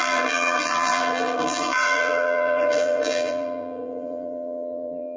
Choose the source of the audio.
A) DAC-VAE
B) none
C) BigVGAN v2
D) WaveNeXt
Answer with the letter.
C